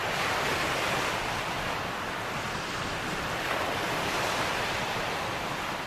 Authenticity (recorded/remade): recorded